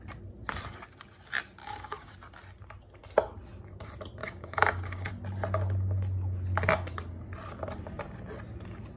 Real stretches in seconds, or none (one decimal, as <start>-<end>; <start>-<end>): 0.0-1.6; 2.1-4.2; 5.1-9.0